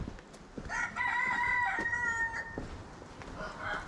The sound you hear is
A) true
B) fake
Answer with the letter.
A